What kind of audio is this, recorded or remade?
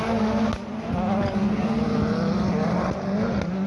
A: recorded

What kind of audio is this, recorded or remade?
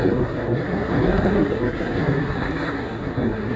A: remade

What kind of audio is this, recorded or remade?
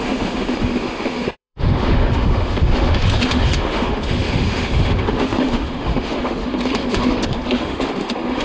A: remade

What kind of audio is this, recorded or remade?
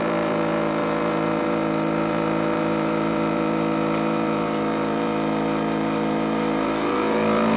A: remade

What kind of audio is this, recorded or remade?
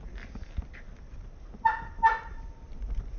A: recorded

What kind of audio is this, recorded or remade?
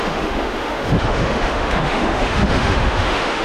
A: remade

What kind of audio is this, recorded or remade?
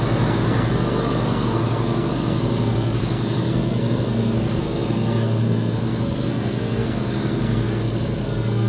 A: remade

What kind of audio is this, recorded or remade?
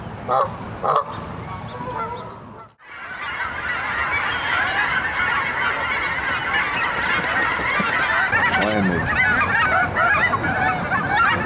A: recorded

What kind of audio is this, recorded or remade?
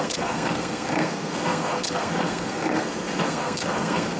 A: remade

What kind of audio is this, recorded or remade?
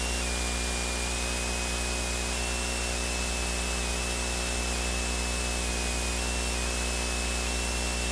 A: recorded